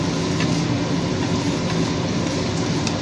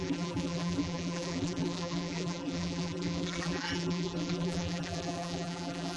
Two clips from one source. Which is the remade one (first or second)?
second